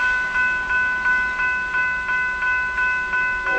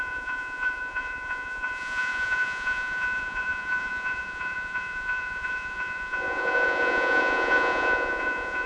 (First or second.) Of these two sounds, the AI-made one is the second